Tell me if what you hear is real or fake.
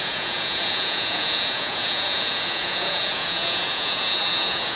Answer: fake